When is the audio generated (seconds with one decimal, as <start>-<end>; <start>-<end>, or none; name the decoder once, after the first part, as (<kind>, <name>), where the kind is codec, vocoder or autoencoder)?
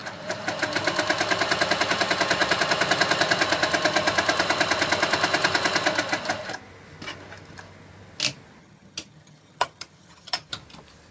8.6-10.5 (vocoder, HiFi-GAN)